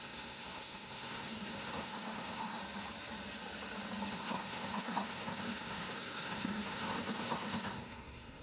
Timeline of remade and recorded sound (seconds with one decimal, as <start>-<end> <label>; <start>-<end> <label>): 0.0-2.6 remade; 2.6-4.1 recorded; 4.1-8.4 remade